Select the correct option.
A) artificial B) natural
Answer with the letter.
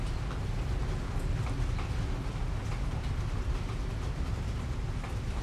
B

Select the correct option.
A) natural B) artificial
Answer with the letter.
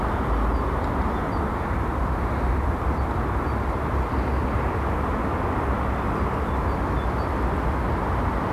A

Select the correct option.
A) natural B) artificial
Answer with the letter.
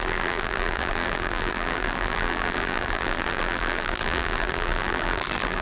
B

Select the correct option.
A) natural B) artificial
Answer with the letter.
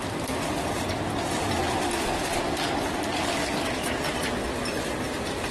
A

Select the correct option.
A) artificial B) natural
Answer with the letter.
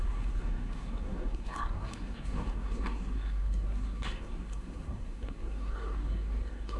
A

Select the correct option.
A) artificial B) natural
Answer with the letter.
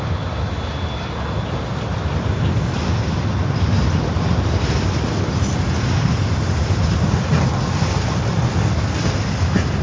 B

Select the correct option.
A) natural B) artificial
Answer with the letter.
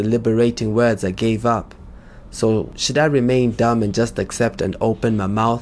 A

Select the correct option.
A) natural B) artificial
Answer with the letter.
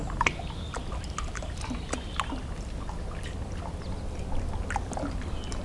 A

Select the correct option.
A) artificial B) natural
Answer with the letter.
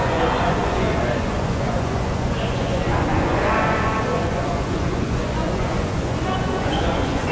A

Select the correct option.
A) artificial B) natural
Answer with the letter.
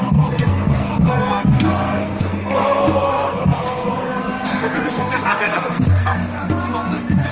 A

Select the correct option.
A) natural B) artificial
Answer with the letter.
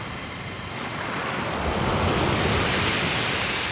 A